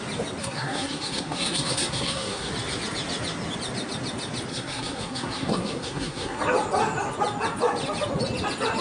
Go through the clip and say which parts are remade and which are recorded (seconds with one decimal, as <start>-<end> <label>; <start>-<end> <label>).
0.0-0.4 recorded; 0.4-2.5 remade; 2.5-4.5 recorded; 4.5-6.4 remade; 6.4-8.8 recorded